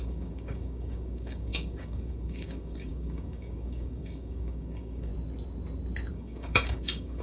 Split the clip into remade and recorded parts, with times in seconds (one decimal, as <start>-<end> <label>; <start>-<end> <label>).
0.0-5.1 remade; 5.1-6.1 recorded; 6.1-7.2 remade

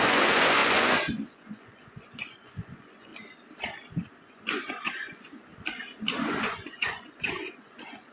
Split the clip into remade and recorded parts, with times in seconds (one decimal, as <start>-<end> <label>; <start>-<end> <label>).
0.0-3.1 remade; 3.1-4.2 recorded; 4.2-5.5 remade; 5.5-6.1 recorded; 6.1-8.1 remade

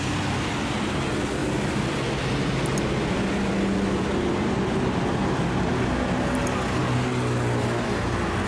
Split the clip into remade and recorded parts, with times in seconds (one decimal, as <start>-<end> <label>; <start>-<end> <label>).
0.0-8.5 recorded

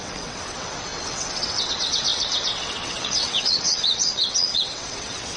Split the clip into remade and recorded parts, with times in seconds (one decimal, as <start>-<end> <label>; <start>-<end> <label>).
0.0-5.4 remade

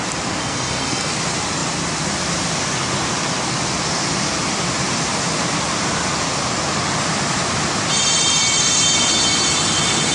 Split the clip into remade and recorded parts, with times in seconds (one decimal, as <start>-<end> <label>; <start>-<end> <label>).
0.0-0.4 recorded; 0.4-1.1 remade; 1.1-10.1 recorded

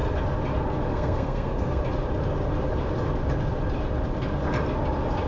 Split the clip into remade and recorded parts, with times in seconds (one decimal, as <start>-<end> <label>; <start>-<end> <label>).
0.0-0.9 recorded; 0.9-1.8 remade; 1.8-5.3 recorded

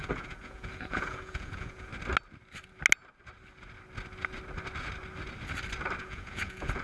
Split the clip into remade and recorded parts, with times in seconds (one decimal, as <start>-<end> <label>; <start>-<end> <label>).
0.0-1.9 remade; 1.9-6.0 recorded; 6.0-6.8 remade